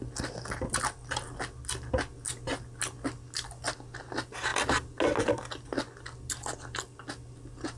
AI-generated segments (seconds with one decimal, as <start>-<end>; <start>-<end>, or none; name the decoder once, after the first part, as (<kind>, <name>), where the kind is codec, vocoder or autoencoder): none